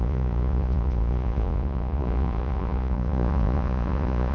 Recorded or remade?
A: remade